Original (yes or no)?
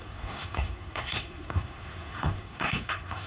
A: no